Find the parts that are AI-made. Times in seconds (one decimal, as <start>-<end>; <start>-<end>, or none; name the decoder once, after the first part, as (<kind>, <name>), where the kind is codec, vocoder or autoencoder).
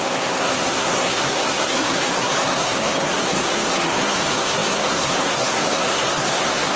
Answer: 0.0-6.8 (codec, SNAC)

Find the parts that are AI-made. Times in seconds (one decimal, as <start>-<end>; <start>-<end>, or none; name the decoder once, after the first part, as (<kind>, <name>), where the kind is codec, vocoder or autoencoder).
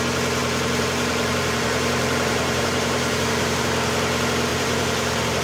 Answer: 0.4-3.6 (vocoder, BigVGAN v2); 4.5-5.4